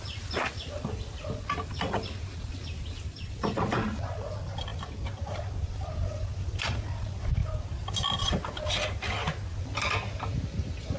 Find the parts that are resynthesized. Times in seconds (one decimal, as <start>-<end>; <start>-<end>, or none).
none